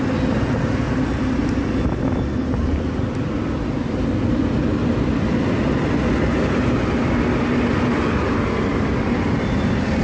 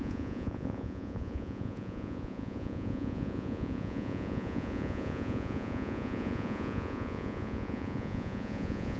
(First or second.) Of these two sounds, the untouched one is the first